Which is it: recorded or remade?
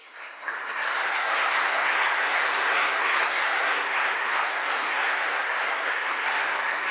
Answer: remade